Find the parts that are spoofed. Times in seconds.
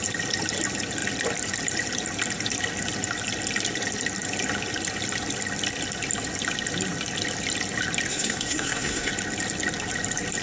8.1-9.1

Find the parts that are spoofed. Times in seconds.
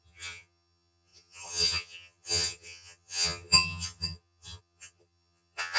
0.0-5.8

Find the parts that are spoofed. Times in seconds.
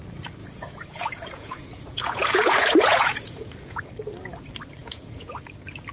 0.4-3.9; 4.8-5.3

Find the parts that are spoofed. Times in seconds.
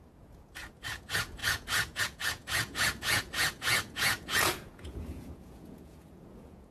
0.0-6.7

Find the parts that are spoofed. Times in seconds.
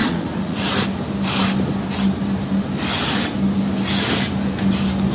0.0-0.6